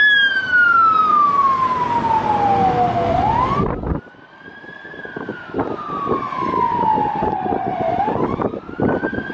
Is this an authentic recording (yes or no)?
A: yes